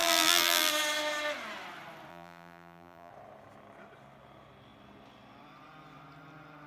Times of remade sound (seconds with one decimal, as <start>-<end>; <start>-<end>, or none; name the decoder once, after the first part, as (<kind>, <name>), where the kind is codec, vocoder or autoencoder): 0.0-0.7 (vocoder, BigVGAN v2); 2.1-3.1